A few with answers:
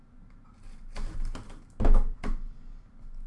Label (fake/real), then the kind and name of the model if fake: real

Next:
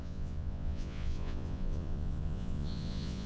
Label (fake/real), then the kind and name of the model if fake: fake, vocoder, Vocos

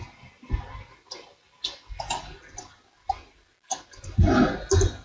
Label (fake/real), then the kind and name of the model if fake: real